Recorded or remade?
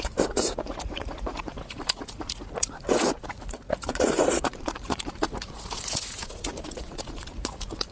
remade